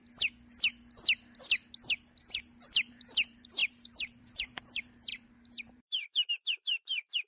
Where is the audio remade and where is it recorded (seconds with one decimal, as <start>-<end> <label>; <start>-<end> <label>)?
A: 0.0-2.9 recorded; 2.9-7.3 remade